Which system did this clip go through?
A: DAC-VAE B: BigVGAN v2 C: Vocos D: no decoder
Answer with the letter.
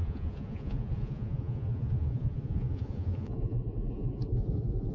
C